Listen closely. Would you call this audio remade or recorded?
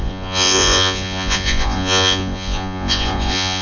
remade